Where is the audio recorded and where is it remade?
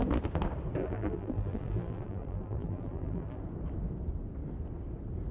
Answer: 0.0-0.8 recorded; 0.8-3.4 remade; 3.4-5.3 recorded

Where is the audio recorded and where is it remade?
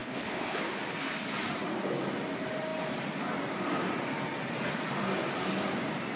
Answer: 0.0-0.8 remade; 0.8-6.2 recorded